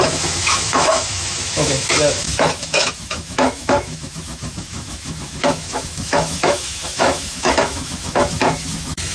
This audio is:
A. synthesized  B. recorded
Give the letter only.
A